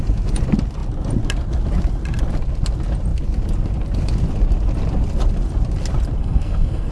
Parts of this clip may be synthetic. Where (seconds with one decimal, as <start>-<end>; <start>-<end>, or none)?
6.2-6.9